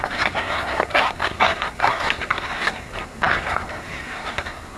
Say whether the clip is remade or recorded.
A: remade